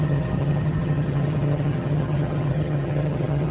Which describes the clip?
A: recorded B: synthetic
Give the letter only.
B